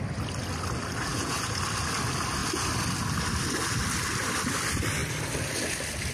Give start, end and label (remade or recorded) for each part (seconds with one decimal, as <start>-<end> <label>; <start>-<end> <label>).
0.0-1.1 recorded; 1.1-1.6 remade; 1.6-6.1 recorded